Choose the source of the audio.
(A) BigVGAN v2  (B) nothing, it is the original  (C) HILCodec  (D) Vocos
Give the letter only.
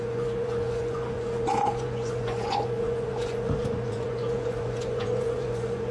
D